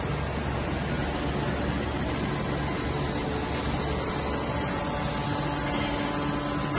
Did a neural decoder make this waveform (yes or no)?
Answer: no